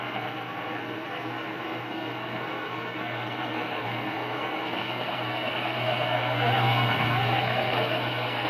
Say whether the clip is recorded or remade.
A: remade